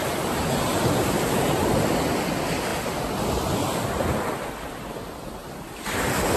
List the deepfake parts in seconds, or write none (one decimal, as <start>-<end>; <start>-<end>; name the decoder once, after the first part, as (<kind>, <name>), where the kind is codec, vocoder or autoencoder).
0.0-1.7 (vocoder, BigVGAN v2)